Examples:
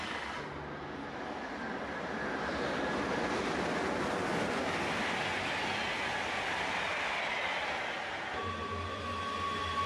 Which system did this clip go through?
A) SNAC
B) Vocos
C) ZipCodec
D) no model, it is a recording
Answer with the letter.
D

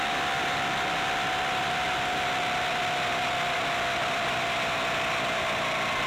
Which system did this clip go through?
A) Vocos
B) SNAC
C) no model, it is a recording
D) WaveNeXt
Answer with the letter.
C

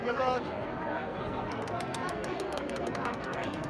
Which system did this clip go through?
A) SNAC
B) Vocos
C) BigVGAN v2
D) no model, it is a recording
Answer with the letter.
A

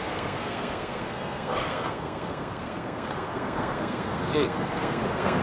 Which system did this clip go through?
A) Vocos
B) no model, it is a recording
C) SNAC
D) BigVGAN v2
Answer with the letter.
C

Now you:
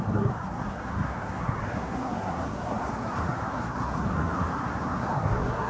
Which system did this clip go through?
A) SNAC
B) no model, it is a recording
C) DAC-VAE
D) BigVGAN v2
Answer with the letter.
A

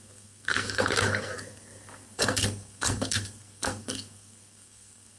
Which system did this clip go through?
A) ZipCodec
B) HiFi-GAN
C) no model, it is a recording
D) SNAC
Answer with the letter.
D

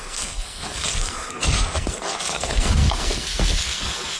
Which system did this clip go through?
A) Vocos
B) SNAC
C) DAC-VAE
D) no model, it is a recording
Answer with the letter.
B